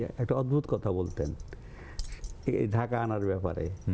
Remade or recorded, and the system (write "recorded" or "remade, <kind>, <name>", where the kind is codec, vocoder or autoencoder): recorded